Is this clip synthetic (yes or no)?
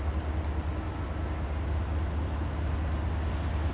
no